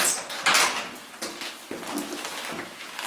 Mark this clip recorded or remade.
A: recorded